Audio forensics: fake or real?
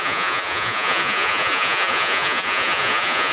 fake